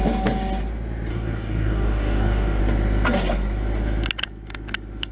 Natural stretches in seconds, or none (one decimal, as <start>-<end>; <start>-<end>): 0.0-1.1; 2.6-5.1